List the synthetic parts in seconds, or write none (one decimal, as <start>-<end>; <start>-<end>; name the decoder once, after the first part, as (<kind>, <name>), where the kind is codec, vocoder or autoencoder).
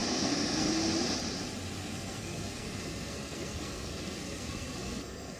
0.0-0.7 (codec, SNAC); 1.9-5.4